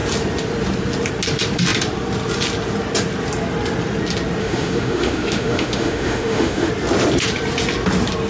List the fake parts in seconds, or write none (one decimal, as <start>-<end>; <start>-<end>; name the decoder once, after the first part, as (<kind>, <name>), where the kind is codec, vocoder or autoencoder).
4.4-6.7 (autoencoder, DAC-VAE)